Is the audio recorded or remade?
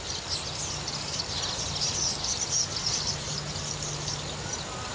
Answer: recorded